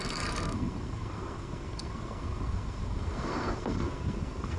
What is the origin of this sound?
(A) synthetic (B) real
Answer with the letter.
A